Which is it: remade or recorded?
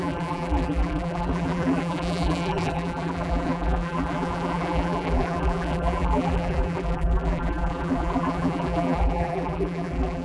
remade